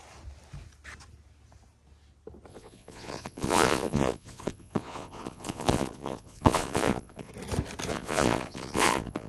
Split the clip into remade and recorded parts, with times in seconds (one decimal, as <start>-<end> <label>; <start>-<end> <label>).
0.0-2.5 recorded; 2.5-7.3 remade; 7.3-7.9 recorded; 7.9-9.3 remade